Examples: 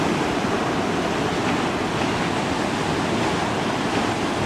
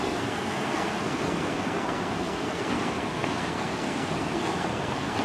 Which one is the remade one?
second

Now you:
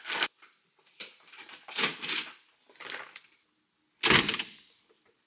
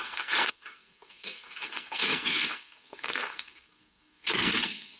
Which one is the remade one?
second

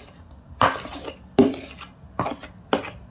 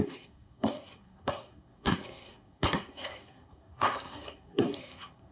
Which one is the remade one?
second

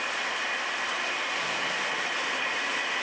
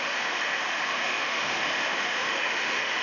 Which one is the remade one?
second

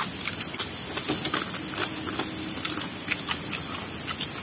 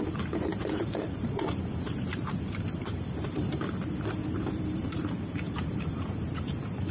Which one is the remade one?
second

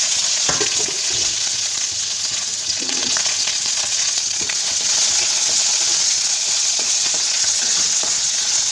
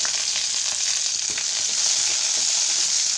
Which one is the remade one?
first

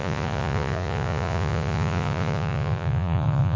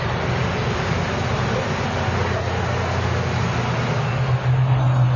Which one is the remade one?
first